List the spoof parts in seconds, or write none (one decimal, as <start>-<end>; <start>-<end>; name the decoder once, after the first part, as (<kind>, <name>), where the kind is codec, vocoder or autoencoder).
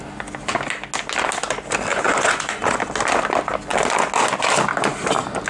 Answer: 1.9-2.6 (vocoder, Vocos)